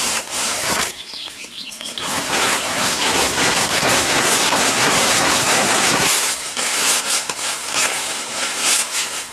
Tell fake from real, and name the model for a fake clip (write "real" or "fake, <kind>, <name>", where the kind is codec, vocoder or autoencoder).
fake, codec, SNAC